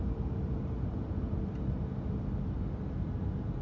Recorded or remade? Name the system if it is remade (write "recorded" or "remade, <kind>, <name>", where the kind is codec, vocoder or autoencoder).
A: recorded